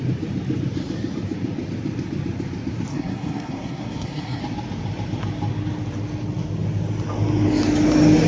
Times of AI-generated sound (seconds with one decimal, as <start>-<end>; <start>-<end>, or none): 2.9-4.4